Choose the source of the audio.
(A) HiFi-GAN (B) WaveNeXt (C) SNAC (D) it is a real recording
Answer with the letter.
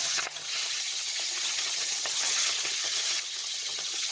A